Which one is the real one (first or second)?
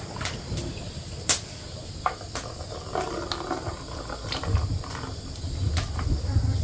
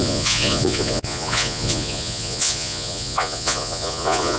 first